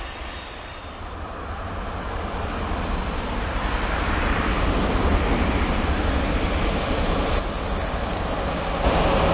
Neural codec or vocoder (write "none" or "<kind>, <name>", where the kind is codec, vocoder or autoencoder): none